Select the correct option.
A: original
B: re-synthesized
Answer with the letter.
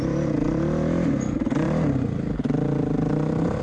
A